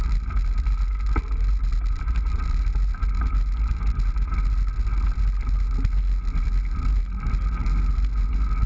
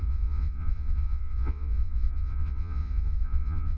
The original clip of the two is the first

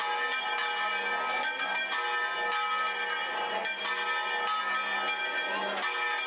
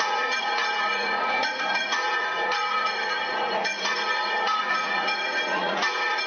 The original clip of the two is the first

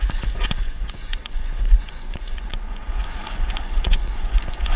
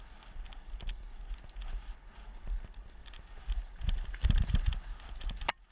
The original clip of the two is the second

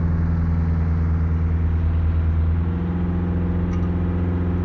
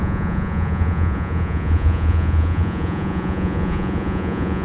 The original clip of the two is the first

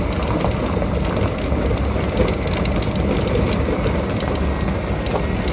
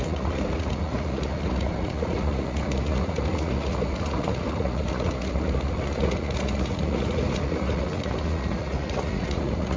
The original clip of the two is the first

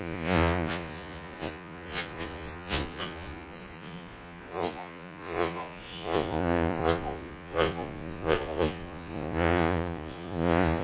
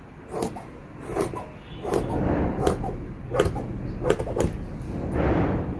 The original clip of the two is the second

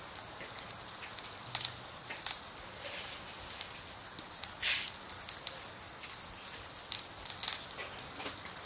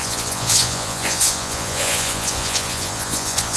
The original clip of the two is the first